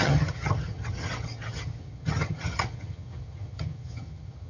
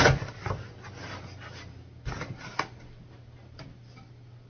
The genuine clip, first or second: second